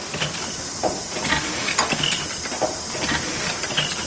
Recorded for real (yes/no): yes